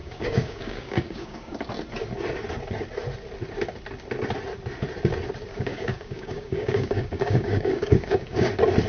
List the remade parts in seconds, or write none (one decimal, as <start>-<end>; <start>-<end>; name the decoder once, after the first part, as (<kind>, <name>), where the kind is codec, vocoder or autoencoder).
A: 0.0-1.5 (codec, DAC); 5.5-8.5